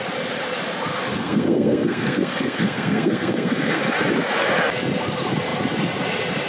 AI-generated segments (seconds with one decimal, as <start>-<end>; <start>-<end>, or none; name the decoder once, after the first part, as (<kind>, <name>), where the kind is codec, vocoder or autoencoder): 1.1-3.8 (codec, SNAC)